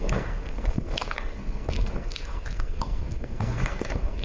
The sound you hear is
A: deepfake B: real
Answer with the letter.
A